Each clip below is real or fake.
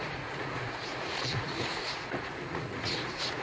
fake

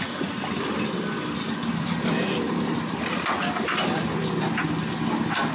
real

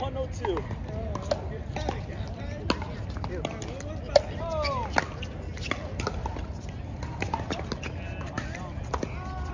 real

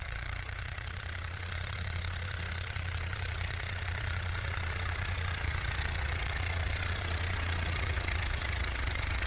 fake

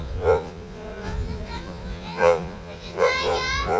fake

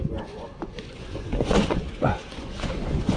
fake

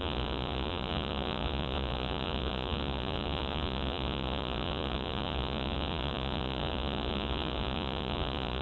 fake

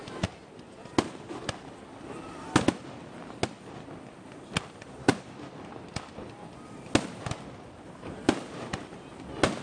real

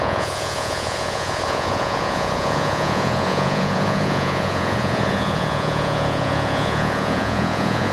fake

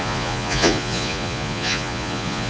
fake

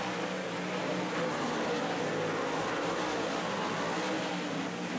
real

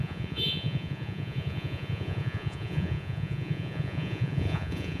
fake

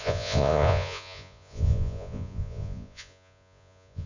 fake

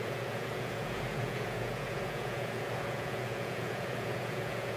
fake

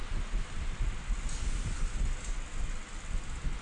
real